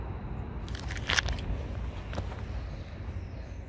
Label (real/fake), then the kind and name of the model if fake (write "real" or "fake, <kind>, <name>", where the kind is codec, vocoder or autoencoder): real